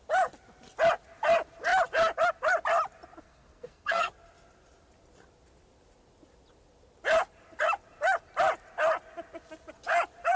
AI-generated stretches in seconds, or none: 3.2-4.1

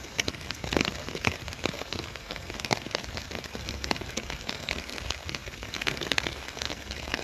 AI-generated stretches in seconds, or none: 0.0-7.2